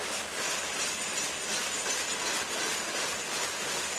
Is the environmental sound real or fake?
real